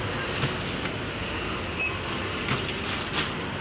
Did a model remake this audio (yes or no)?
no